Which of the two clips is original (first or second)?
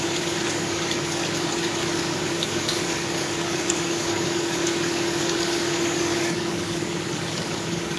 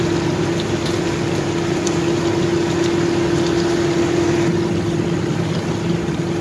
second